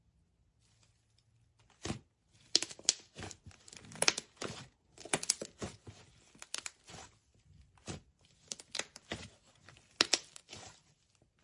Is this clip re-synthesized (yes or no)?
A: no